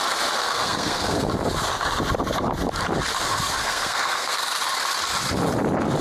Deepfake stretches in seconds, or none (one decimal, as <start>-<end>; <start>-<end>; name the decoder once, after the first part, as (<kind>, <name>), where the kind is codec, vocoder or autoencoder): 0.4-1.3 (codec, SNAC); 3.6-4.4